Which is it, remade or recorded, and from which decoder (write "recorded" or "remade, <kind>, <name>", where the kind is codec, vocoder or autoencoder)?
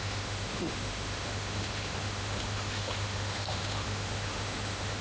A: remade, autoencoder, DAC-VAE